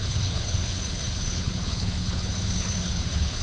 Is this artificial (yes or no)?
yes